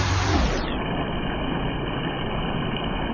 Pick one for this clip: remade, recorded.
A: recorded